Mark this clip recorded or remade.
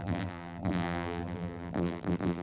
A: remade